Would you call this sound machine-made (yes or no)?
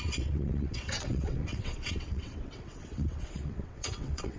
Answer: yes